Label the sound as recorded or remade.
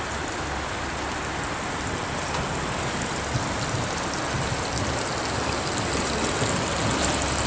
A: recorded